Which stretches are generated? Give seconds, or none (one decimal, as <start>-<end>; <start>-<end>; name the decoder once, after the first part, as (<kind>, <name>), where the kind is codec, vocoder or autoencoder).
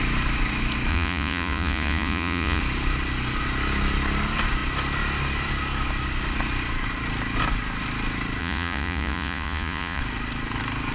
0.9-2.6 (vocoder, Vocos); 8.4-10.0